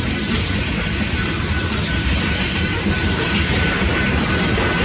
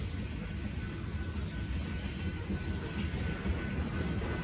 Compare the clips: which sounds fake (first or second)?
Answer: first